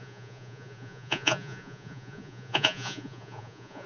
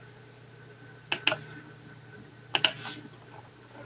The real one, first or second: second